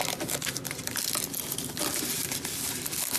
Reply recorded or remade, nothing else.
recorded